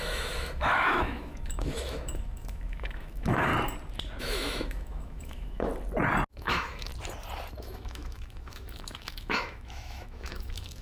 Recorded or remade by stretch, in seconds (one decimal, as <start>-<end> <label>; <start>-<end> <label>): 0.0-3.5 remade; 3.5-4.2 recorded; 4.2-5.7 remade; 5.7-6.3 recorded; 6.3-6.9 remade; 6.9-7.6 recorded; 7.6-10.8 remade